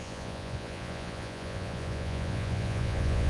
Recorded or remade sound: remade